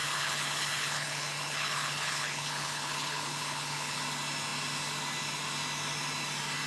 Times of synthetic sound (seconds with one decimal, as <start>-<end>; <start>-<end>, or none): 0.0-4.0